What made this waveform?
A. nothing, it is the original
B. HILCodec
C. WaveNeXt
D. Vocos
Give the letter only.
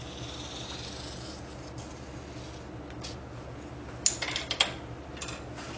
A